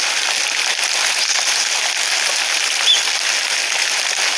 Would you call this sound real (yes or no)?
yes